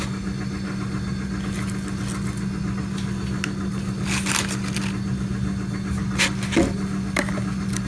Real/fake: real